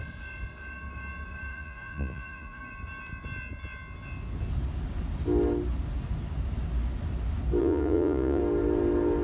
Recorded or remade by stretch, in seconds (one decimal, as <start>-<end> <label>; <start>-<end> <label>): 0.0-1.5 recorded; 1.5-2.6 remade; 2.6-7.6 recorded; 7.6-8.4 remade; 8.4-9.2 recorded